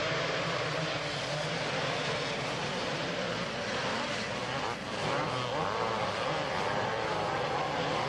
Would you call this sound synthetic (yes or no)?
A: no